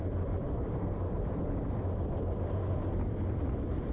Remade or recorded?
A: remade